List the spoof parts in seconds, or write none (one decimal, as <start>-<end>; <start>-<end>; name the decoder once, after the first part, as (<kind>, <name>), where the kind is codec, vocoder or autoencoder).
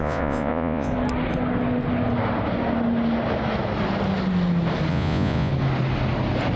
0.0-0.9 (vocoder, Vocos); 4.9-5.5